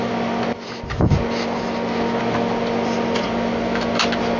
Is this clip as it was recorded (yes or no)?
yes